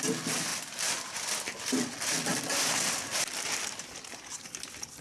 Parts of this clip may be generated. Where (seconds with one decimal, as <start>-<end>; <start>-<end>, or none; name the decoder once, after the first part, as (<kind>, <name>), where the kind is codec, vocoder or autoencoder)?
none